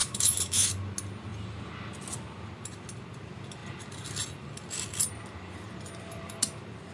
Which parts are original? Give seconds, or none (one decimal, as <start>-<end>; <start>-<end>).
0.7-6.9